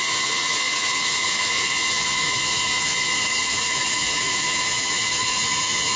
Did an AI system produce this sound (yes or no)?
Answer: yes